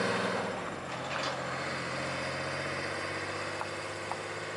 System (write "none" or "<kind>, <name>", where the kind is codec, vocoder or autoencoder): none